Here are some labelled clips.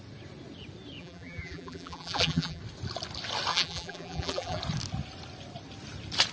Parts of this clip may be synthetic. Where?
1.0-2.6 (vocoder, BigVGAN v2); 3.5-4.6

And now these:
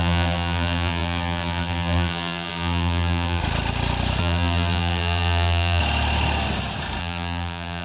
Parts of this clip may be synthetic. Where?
0.0-3.4 (vocoder, BigVGAN v2); 4.2-5.8; 7.0-7.8

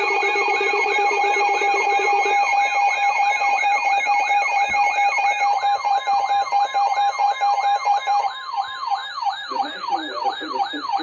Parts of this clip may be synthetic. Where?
0.0-2.1 (vocoder, BigVGAN v2); 3.1-9.0; 9.6-11.0

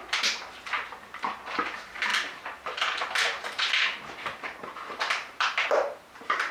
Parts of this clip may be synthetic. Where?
0.0-6.5 (vocoder, BigVGAN v2)

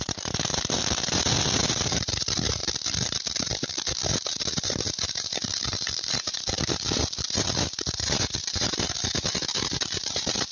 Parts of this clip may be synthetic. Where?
0.0-2.6 (vocoder, BigVGAN v2); 3.4-10.5

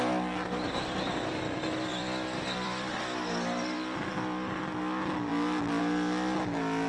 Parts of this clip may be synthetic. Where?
1.9-4.6 (vocoder, BigVGAN v2)